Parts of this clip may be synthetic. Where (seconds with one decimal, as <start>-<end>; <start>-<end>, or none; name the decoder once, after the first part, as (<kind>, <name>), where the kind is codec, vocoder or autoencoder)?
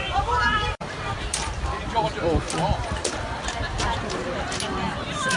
0.0-1.8 (vocoder, BigVGAN v2); 5.0-5.4